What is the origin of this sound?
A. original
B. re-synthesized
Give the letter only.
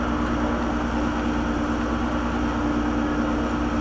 A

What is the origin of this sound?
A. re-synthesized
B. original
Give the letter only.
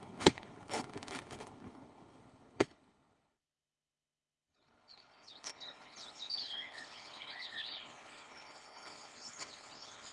A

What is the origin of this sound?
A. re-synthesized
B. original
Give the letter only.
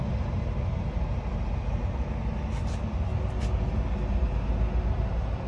B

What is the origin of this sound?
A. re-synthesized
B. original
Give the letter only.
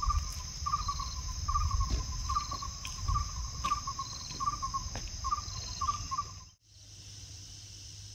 A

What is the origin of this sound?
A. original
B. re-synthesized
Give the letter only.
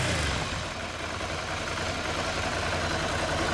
A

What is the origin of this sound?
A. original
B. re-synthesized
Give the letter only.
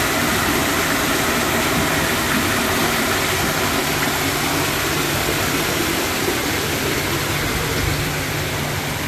B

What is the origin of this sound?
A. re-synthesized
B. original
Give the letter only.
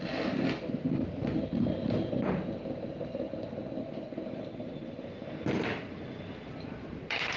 B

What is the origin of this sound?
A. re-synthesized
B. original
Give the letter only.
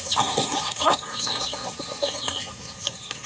A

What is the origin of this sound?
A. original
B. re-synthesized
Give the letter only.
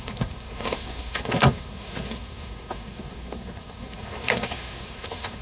B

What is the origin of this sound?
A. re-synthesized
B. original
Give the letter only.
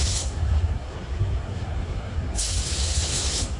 A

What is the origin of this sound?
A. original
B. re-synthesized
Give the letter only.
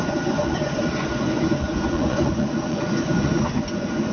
B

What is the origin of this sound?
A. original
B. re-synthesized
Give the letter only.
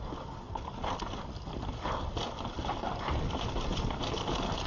A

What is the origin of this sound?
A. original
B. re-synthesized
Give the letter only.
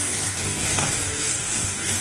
B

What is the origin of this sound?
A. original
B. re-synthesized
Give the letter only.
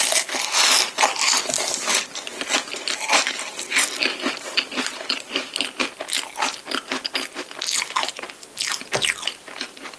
A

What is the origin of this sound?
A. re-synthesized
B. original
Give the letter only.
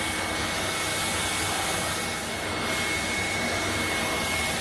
B